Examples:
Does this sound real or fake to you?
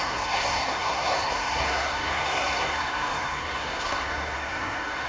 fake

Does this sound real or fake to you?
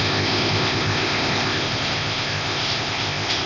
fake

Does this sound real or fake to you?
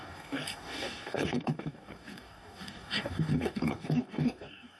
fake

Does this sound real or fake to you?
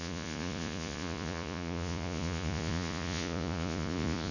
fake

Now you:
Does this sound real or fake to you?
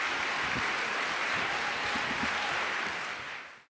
real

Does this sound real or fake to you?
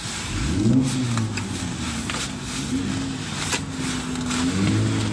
real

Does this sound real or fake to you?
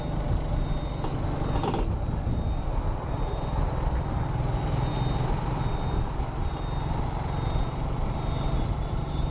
real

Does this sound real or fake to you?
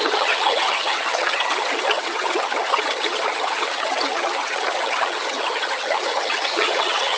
fake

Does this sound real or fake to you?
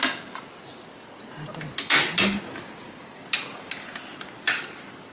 real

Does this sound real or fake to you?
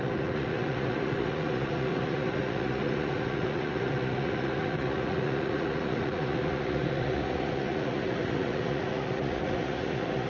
fake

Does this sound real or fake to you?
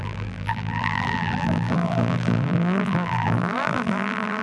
fake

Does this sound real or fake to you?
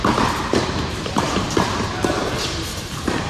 fake